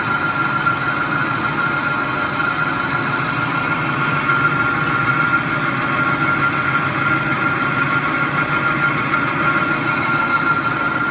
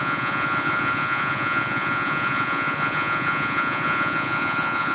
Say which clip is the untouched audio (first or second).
first